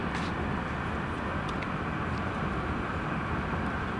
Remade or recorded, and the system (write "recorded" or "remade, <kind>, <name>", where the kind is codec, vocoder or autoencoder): recorded